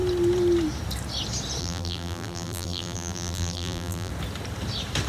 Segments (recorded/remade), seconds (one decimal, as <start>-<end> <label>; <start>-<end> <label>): 0.0-1.6 recorded; 1.6-4.1 remade; 4.1-5.1 recorded